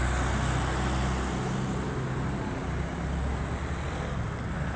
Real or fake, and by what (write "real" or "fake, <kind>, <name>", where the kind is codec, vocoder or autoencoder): real